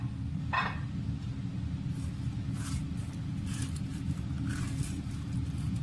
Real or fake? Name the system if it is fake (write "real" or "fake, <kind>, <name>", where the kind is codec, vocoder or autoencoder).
real